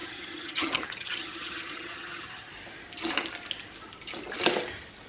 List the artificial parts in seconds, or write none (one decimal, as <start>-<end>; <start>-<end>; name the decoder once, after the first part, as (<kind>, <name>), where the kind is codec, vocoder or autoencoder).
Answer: 0.0-2.5 (vocoder, HiFi-GAN)